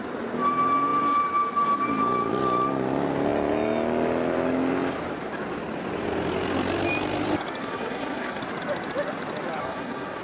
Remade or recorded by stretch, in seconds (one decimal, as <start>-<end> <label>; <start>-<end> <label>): 0.0-7.6 recorded; 7.6-8.4 remade; 8.4-9.6 recorded; 9.6-10.2 remade